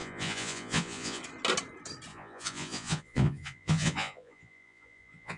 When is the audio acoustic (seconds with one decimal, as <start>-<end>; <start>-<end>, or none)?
1.2-2.1